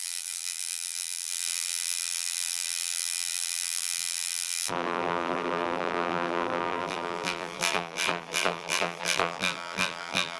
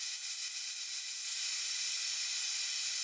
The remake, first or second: first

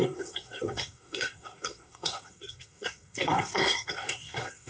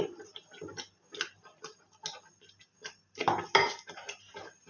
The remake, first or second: first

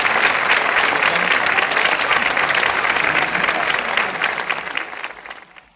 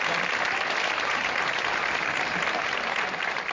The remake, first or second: second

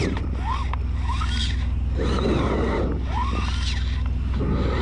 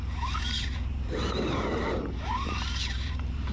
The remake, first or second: second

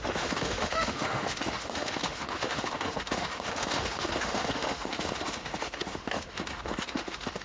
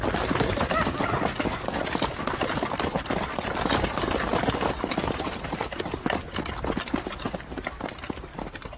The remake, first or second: first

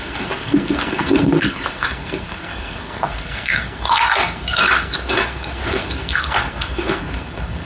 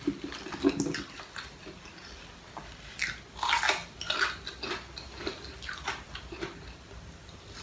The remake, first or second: first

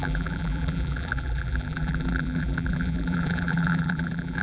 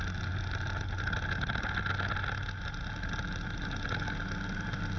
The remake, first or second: first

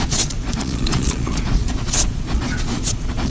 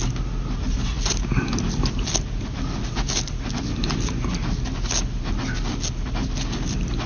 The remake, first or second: first